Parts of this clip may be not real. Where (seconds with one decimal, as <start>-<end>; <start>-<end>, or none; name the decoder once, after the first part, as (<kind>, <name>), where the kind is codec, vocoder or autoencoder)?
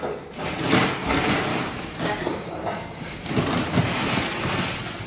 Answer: 1.5-3.3 (codec, DAC)